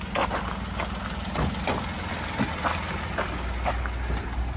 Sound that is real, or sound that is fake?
real